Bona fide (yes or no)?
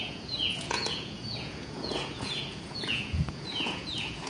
no